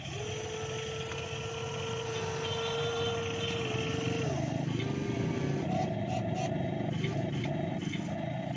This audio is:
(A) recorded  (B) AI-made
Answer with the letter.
A